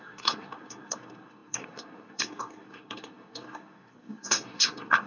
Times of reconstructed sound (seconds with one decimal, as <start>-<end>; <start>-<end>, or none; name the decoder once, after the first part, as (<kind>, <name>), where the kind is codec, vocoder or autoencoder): 0.0-5.1 (codec, SNAC)

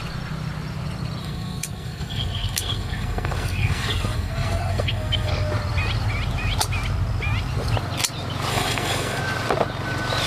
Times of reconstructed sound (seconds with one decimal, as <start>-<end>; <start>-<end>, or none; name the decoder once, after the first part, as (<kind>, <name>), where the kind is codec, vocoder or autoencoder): 1.2-5.3 (codec, SNAC); 8.5-9.2

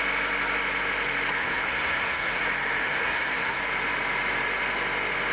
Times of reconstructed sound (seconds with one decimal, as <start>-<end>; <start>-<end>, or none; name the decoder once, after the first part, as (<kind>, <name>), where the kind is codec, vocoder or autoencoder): 1.4-2.4 (codec, SNAC); 2.8-3.6

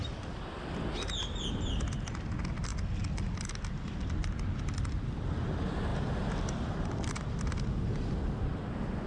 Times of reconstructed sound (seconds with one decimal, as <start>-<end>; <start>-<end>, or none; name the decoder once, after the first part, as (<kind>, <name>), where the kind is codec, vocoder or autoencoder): none

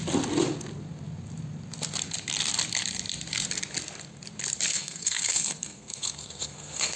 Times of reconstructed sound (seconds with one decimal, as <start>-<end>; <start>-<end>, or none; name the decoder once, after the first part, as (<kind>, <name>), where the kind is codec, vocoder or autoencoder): 4.7-7.0 (codec, SNAC)